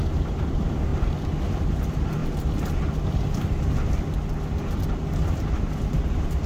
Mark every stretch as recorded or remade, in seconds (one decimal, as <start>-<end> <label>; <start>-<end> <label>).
0.0-6.5 recorded